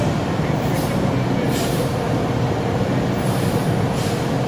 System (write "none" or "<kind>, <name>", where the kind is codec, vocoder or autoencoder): none